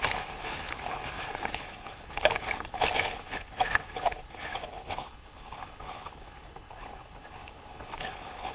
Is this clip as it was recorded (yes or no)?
no